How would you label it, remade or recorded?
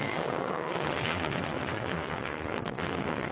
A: remade